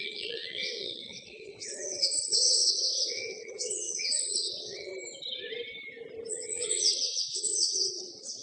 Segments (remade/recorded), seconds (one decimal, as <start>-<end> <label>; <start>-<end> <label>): 0.0-4.9 remade; 4.9-6.3 recorded; 6.3-8.4 remade